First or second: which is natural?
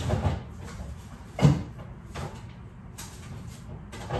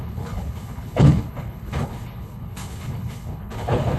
first